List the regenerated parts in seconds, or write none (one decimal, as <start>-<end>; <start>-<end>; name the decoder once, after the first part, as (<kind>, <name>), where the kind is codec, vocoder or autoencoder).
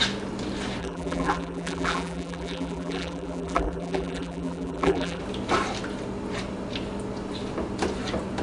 0.8-5.2 (vocoder, BigVGAN v2)